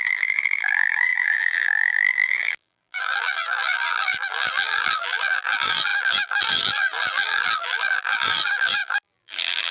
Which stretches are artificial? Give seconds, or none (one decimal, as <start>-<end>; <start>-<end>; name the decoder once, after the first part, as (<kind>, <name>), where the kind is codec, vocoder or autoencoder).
0.0-9.7 (vocoder, BigVGAN v2)